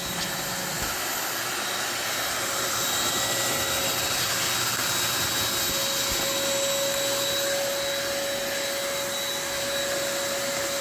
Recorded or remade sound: recorded